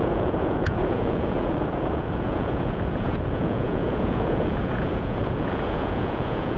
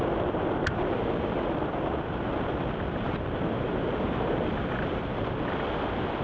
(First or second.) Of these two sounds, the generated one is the first